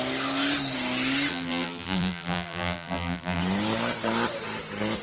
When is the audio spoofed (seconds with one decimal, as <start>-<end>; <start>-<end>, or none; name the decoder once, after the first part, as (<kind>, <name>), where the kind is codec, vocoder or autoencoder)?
1.3-3.4 (vocoder, BigVGAN v2)